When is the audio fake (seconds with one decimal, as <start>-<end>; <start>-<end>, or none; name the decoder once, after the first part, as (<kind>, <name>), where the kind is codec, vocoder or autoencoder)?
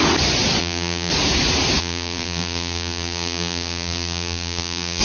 0.6-1.1 (vocoder, BigVGAN v2); 1.8-5.0